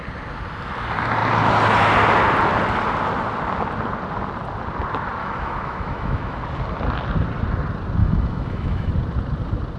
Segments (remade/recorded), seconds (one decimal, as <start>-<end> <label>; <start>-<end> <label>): 0.0-5.2 recorded; 5.2-6.4 remade; 6.4-8.0 recorded; 8.0-8.9 remade; 8.9-9.8 recorded